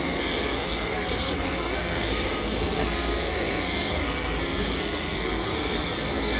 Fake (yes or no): yes